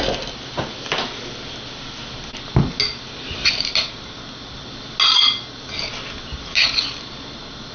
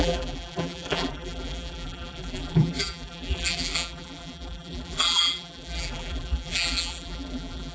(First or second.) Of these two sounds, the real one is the first